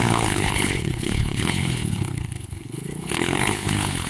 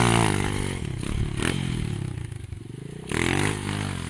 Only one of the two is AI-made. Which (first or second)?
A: first